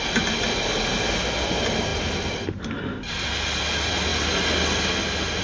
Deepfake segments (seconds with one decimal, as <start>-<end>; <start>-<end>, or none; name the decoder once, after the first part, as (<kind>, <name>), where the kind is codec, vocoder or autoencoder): none